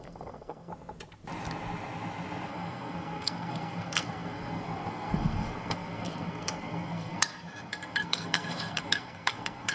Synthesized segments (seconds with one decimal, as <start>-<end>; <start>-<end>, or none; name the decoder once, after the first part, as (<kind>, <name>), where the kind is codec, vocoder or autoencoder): 0.0-0.7 (codec, SNAC); 2.5-9.7